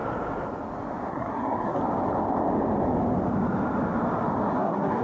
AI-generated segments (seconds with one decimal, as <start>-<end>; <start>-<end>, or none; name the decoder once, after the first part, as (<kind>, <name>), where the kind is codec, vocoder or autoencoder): 1.1-1.8 (codec, SNAC); 4.5-5.0